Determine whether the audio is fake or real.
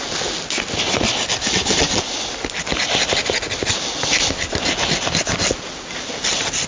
real